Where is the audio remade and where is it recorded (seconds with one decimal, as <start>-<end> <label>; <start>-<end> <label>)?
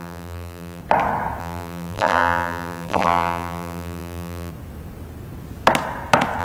0.0-0.8 remade; 0.8-1.4 recorded; 1.4-4.5 remade; 4.5-6.4 recorded